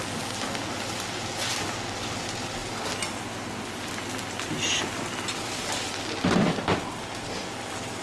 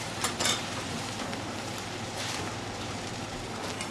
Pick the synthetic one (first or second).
second